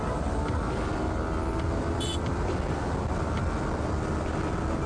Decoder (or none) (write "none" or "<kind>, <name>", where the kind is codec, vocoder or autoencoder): none